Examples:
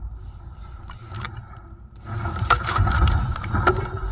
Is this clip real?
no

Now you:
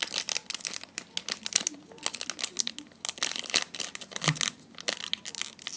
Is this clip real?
yes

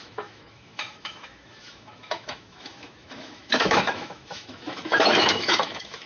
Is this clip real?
no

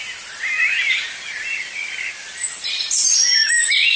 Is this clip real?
no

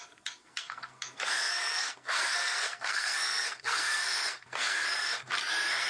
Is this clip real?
no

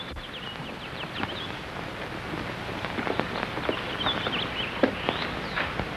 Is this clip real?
yes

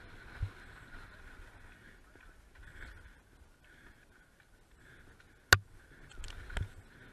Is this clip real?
yes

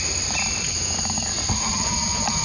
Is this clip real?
no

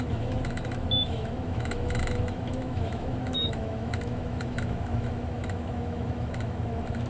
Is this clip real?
no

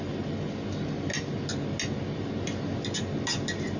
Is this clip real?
yes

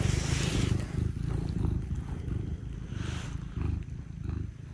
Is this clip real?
yes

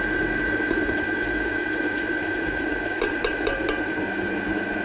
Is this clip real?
no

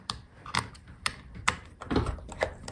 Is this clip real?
no